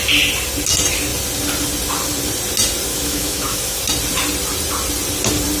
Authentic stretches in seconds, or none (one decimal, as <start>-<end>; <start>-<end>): 0.0-2.9; 3.8-5.6